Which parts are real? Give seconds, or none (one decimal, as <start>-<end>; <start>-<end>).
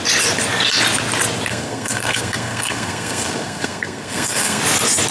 0.0-1.5; 4.6-5.1